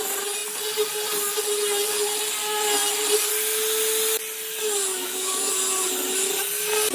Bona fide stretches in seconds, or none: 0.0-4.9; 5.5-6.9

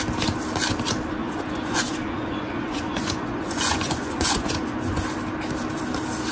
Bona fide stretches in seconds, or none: 0.0-1.2; 5.0-6.3

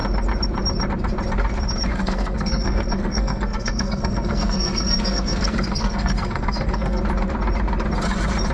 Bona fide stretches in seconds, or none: 0.0-1.9; 7.0-8.5

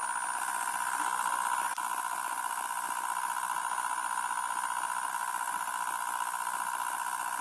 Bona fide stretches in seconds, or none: 0.0-7.4